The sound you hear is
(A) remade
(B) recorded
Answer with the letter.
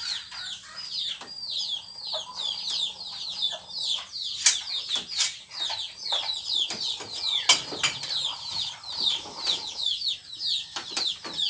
B